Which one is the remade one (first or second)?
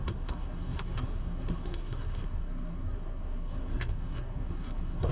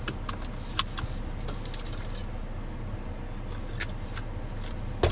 first